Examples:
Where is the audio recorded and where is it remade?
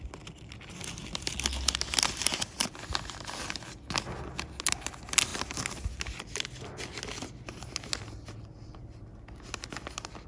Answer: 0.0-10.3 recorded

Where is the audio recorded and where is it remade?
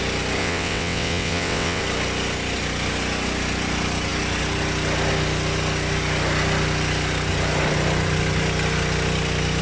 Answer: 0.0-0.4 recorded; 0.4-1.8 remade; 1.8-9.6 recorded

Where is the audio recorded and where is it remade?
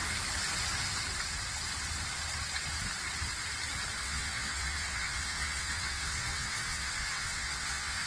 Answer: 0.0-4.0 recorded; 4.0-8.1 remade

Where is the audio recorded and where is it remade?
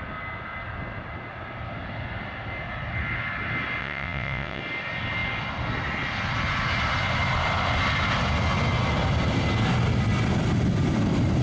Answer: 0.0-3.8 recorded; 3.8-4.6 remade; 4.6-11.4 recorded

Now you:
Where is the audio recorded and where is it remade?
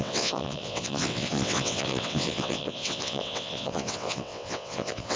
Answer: 0.0-5.2 remade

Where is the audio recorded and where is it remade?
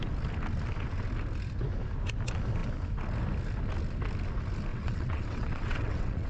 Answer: 0.0-4.7 recorded; 4.7-6.3 remade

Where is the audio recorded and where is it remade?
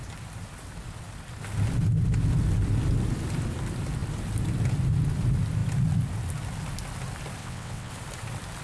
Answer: 0.0-7.4 recorded; 7.4-7.9 remade; 7.9-8.6 recorded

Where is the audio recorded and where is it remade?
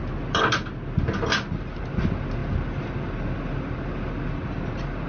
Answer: 0.0-5.1 recorded